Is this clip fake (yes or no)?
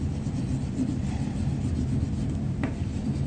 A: no